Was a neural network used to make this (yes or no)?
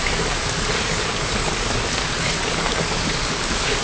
yes